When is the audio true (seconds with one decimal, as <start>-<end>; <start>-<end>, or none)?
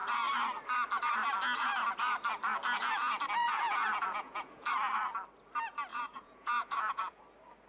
0.0-3.4; 4.7-5.9; 7.2-7.7